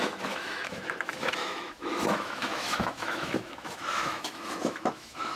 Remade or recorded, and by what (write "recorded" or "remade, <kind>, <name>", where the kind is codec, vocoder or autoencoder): remade, autoencoder, DAC-VAE